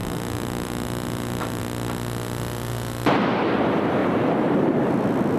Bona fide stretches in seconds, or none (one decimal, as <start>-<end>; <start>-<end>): 1.6-4.0; 4.9-5.4